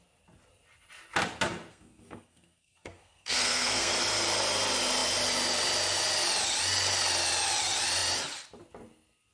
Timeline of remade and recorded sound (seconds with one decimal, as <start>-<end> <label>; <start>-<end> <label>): 0.0-1.7 recorded; 1.7-3.9 remade; 3.9-9.3 recorded